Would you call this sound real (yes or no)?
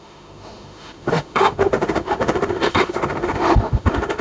no